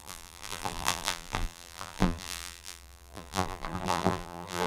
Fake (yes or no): yes